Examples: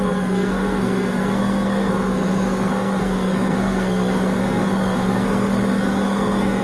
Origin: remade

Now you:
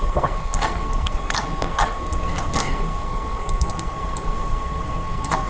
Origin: remade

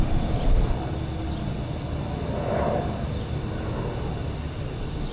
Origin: recorded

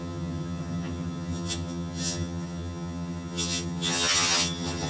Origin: remade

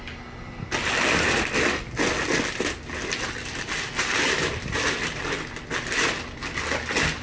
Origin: recorded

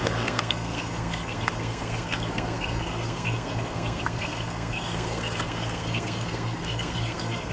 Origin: remade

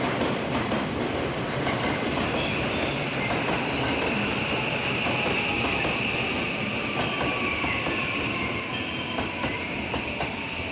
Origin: recorded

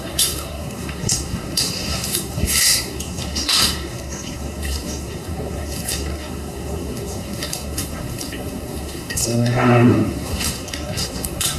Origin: remade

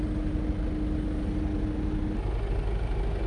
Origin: recorded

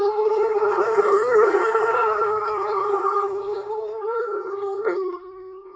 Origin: remade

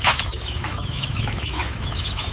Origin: remade